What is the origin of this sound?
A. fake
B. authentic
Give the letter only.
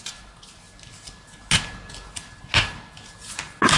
B